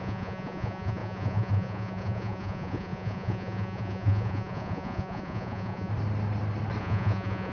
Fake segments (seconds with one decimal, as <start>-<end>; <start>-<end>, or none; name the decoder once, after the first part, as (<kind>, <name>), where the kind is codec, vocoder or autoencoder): 0.0-5.9 (vocoder, Vocos); 6.8-7.5